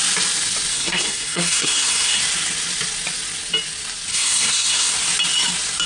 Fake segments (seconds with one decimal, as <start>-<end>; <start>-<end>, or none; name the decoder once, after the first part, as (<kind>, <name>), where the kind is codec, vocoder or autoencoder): 0.7-2.2 (codec, SNAC); 4.1-4.9